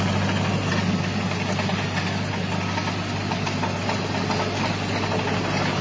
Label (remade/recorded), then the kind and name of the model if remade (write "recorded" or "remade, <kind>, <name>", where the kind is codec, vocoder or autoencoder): recorded